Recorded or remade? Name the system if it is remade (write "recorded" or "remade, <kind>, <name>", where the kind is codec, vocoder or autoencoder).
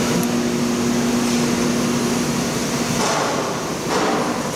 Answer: recorded